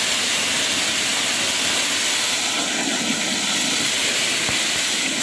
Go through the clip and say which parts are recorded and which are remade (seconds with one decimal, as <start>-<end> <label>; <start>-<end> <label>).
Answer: 0.0-5.2 recorded